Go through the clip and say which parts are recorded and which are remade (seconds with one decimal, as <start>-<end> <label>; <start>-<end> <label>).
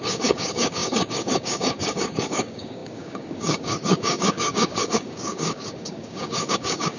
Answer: 0.0-7.0 remade